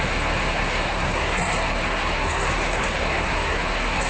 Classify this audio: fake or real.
fake